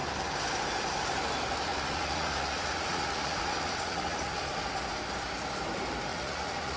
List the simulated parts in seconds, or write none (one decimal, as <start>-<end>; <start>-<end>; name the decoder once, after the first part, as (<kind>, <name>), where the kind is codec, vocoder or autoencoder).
1.7-4.4 (vocoder, Vocos); 6.1-6.8